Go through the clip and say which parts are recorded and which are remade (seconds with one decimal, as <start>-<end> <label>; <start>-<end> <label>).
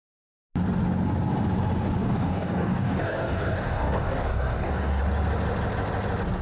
0.0-2.0 recorded; 2.0-5.0 remade; 5.0-6.4 recorded